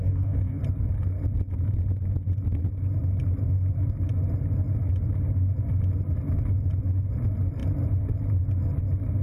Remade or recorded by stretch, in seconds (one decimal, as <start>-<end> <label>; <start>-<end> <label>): 0.0-0.6 remade; 0.6-9.2 recorded